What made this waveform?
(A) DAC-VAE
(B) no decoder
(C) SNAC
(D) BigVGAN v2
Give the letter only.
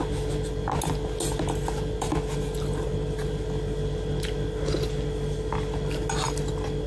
B